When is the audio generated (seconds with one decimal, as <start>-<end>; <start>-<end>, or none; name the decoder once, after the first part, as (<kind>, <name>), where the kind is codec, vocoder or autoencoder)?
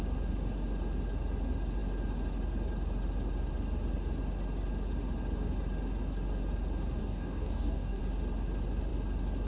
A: 7.0-8.0 (codec, DAC)